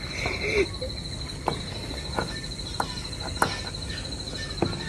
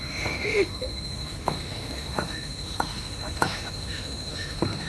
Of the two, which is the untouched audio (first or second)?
first